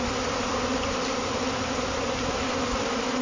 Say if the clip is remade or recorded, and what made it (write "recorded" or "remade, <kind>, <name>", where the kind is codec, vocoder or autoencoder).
recorded